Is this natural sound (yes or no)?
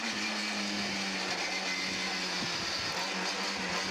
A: yes